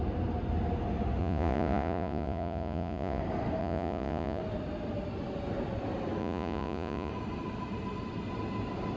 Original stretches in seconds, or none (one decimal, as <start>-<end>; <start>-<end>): 0.0-1.2; 3.2-3.6; 4.4-6.2; 7.1-9.0